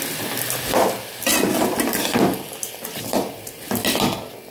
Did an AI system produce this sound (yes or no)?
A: no